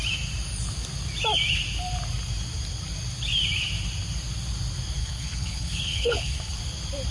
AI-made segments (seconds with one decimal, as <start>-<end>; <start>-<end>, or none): 5.0-6.6